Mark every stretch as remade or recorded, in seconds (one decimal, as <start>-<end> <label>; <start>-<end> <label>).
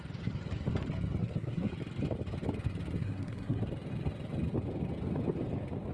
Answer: 0.0-1.2 recorded; 1.2-1.7 remade; 1.7-3.0 recorded; 3.0-3.6 remade; 3.6-5.9 recorded